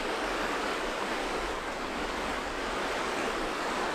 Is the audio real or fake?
fake